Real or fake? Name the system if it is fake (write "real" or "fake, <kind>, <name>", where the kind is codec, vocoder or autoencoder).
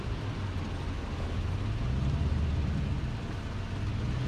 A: real